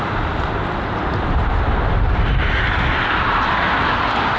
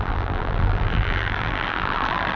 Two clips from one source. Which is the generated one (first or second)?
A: second